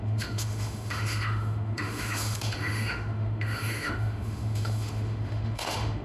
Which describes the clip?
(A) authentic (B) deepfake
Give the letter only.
B